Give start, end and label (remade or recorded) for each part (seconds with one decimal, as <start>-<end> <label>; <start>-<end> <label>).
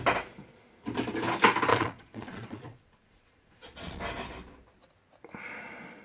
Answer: 0.0-1.7 recorded; 1.7-4.0 remade; 4.0-6.0 recorded